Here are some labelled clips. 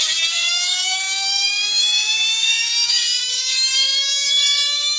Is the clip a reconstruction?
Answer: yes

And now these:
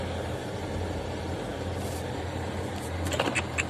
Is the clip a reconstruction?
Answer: no